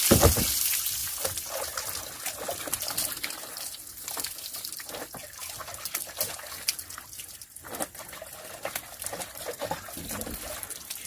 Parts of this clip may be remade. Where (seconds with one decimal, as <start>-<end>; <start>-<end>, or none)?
none